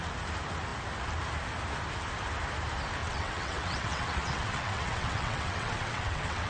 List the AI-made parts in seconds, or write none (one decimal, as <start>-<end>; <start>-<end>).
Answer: 3.0-6.5